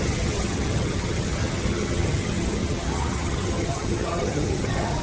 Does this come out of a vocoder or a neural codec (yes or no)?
yes